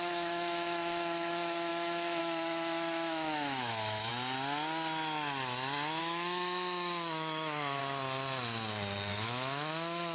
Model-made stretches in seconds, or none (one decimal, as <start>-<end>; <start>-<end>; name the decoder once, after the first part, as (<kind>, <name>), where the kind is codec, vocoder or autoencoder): 0.0-4.1 (autoencoder, DAC-VAE); 6.0-7.8; 9.1-10.1